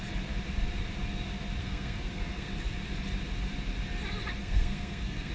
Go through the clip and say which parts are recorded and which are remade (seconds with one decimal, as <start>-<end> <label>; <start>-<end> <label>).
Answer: 0.0-1.6 recorded; 1.6-2.5 remade; 2.5-4.4 recorded; 4.4-5.3 remade